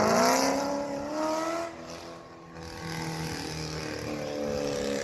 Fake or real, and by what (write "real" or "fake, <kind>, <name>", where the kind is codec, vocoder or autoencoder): real